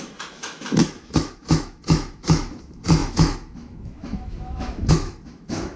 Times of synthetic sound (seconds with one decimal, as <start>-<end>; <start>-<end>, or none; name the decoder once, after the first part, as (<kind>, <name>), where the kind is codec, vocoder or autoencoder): 0.0-5.8 (autoencoder, DAC-VAE)